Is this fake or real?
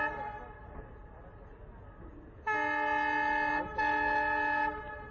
real